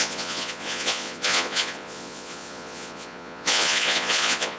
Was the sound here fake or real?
fake